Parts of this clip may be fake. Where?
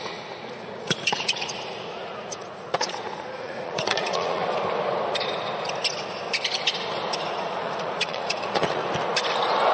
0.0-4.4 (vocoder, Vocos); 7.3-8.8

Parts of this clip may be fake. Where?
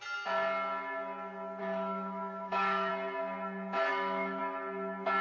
1.6-2.9 (autoencoder, DAC-VAE); 3.9-4.4